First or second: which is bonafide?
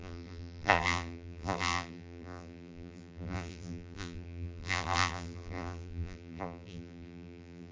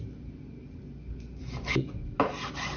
second